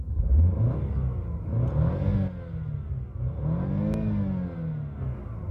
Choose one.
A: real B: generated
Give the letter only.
A